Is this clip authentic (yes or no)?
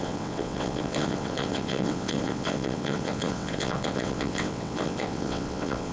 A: no